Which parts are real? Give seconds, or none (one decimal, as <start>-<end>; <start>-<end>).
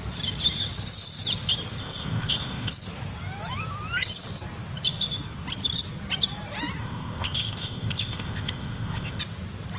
0.0-1.8; 2.7-6.8; 9.2-9.8